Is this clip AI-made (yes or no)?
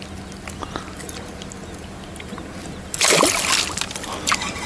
no